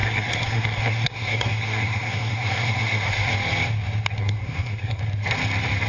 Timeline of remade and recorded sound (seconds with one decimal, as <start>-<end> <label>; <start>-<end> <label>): 0.0-3.3 remade; 3.3-4.2 recorded; 4.2-5.0 remade; 5.0-5.9 recorded